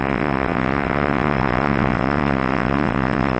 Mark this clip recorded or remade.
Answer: remade